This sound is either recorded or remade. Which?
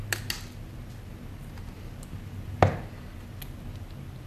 recorded